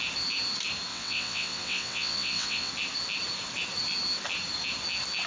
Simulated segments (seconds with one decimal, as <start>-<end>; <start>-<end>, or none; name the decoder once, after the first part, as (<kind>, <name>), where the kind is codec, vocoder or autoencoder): 0.9-2.7 (vocoder, WaveNeXt)